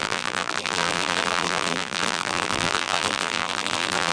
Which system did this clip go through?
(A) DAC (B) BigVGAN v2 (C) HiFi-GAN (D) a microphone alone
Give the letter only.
B